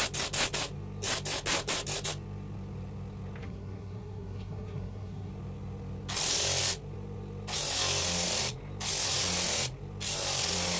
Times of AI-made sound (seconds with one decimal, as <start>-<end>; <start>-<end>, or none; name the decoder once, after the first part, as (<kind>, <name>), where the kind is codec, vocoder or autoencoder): 3.4-5.3 (codec, SNAC)